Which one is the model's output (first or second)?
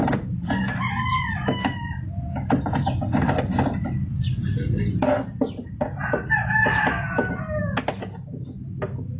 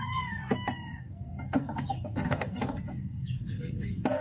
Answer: second